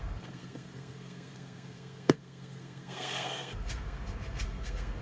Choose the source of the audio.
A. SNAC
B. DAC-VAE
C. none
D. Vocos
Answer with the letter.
A